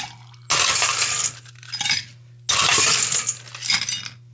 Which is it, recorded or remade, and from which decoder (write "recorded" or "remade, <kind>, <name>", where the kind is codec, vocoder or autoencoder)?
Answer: recorded